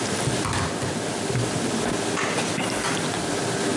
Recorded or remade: recorded